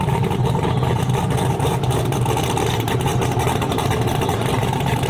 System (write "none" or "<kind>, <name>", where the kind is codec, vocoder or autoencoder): vocoder, BigVGAN v2